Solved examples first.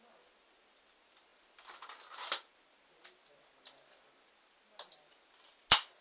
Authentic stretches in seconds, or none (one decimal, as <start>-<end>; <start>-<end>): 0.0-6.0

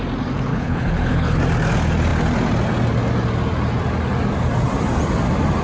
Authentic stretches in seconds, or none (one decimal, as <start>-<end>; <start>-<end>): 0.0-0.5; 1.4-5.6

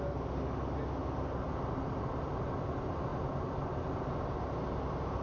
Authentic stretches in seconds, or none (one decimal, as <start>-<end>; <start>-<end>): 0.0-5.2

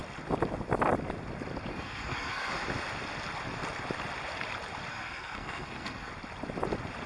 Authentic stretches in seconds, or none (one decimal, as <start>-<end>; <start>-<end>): 0.0-1.7; 2.5-4.9; 6.1-7.1

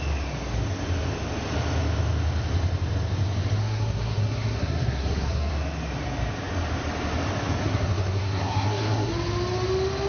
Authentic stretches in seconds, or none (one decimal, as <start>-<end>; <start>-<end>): 0.0-3.6; 5.5-7.6; 9.1-10.1